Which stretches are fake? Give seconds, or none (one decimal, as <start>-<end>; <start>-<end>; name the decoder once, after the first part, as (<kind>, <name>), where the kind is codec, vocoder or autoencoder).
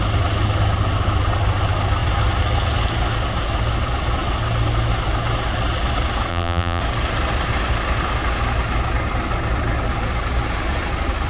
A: 6.3-6.8 (vocoder, BigVGAN v2)